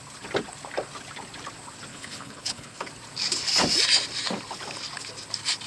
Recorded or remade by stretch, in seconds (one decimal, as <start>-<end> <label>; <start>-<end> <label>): 0.0-1.9 recorded; 1.9-2.9 remade; 2.9-5.7 recorded